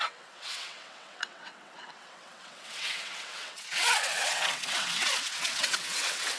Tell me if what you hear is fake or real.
fake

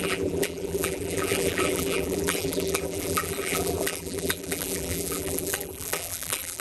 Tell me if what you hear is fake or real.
fake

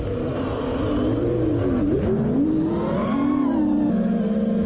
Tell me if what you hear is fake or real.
real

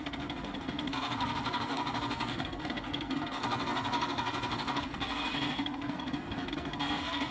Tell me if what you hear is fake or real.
fake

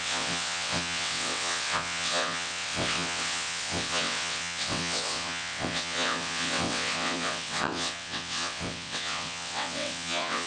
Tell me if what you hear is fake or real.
fake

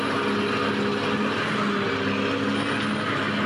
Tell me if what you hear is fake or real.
real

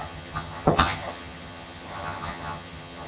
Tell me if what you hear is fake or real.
fake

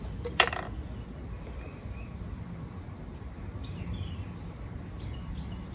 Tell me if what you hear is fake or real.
real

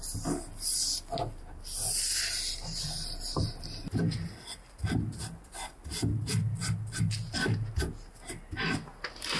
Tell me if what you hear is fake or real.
real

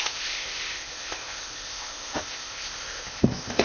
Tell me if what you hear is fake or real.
fake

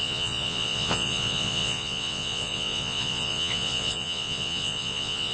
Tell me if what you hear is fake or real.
fake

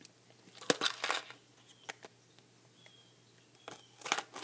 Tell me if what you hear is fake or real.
real